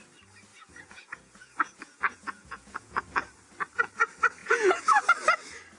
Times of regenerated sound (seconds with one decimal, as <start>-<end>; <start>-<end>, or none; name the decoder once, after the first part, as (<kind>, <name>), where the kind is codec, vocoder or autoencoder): 0.5-3.0 (vocoder, Vocos); 4.4-5.0